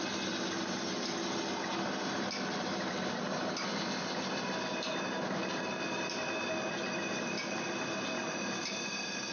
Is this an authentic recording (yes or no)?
yes